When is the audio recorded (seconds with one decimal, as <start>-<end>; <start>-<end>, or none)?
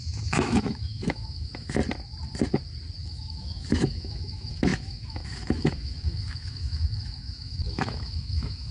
1.8-3.0